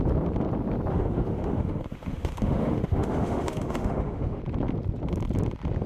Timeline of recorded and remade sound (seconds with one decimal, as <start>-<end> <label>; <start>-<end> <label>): 0.0-0.9 recorded; 0.9-4.4 remade; 4.4-5.9 recorded